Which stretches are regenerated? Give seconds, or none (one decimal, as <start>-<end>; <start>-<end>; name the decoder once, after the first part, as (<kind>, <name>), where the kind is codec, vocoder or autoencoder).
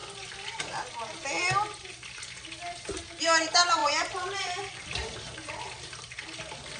3.8-6.2 (vocoder, BigVGAN v2)